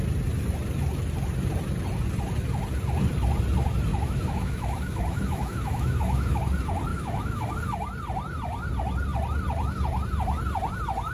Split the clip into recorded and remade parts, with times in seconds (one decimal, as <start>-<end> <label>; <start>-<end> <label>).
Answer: 0.0-3.9 recorded; 3.9-6.4 remade; 6.4-6.9 recorded; 6.9-7.5 remade; 7.5-11.1 recorded